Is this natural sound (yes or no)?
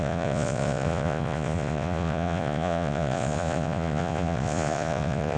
no